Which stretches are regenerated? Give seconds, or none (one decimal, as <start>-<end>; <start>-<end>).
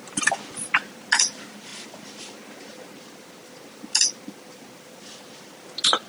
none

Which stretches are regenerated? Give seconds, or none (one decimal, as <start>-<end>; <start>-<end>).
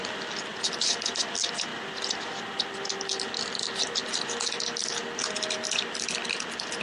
none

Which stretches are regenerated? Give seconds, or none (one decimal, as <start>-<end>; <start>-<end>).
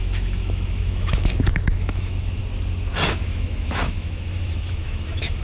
0.0-2.4; 3.1-5.4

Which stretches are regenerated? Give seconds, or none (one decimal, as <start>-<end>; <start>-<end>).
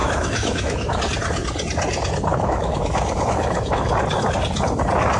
0.0-1.0; 2.3-3.9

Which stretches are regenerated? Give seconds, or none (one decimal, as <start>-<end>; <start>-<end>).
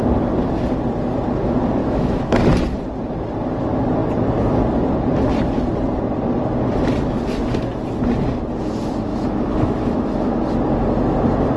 1.8-2.4; 9.1-10.3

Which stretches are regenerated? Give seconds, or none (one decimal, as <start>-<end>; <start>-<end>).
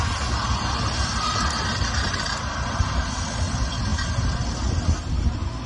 none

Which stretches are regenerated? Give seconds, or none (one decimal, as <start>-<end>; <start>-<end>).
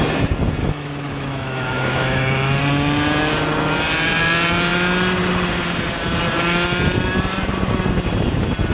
0.6-2.6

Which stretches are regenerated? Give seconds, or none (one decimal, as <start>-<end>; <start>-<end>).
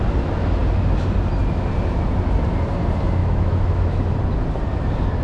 3.2-4.0